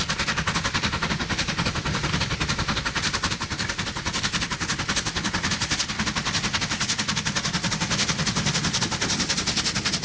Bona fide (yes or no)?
yes